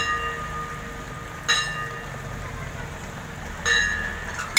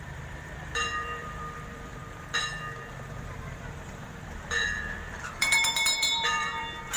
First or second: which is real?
first